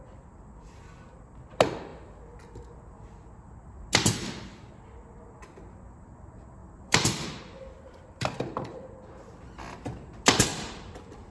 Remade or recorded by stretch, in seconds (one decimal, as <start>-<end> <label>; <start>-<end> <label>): 0.0-6.6 recorded; 6.6-9.1 remade; 9.1-10.5 recorded; 10.5-11.3 remade